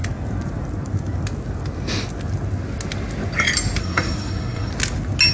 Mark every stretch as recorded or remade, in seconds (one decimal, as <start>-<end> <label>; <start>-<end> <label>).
0.0-3.8 recorded; 3.8-4.7 remade; 4.7-5.3 recorded